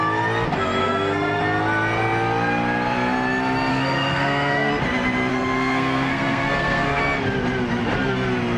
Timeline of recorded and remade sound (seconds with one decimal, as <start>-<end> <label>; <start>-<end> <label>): 0.0-0.8 recorded; 0.8-1.4 remade; 1.4-3.7 recorded; 3.7-4.7 remade; 4.7-5.3 recorded; 5.3-7.0 remade; 7.0-8.6 recorded